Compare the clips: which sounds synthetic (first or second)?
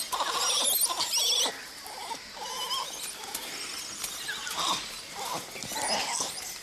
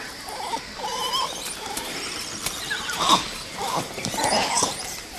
second